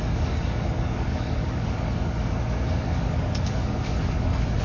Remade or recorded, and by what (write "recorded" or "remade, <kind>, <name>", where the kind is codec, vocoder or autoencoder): remade, codec, DAC